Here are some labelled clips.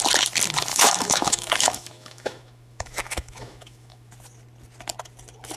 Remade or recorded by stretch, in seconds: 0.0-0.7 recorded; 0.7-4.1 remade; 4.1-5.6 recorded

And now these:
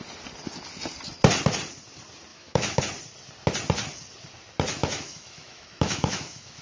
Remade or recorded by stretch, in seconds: 0.0-2.3 recorded; 2.3-2.8 remade; 2.8-4.8 recorded; 4.8-6.6 remade

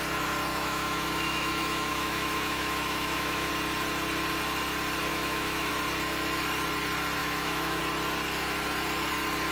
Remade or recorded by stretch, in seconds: 0.0-0.5 recorded; 0.5-3.5 remade; 3.5-5.1 recorded; 5.1-5.7 remade; 5.7-7.2 recorded; 7.2-7.8 remade; 7.8-9.5 recorded

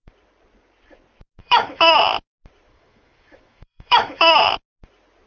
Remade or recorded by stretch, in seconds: 0.0-1.4 recorded; 1.4-2.0 remade; 2.0-2.7 recorded; 2.7-4.5 remade; 4.5-5.3 recorded

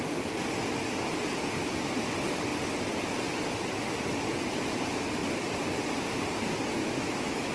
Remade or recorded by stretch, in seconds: 0.0-6.8 recorded; 6.8-7.5 remade

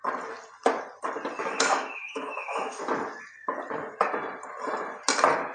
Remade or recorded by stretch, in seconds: 0.0-1.4 recorded; 1.4-2.8 remade; 2.8-5.5 recorded